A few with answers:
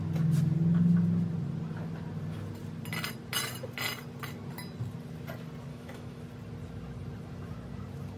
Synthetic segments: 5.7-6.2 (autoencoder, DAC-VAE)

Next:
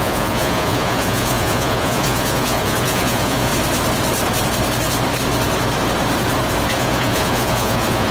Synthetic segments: 0.0-3.5 (vocoder, Vocos); 6.7-8.1